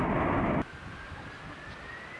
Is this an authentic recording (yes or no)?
yes